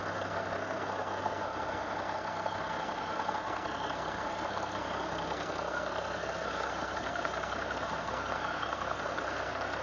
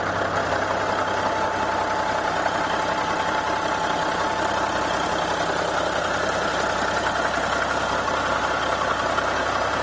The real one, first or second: second